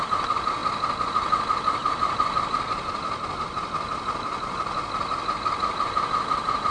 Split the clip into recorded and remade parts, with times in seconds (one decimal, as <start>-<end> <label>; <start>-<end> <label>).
0.0-6.7 recorded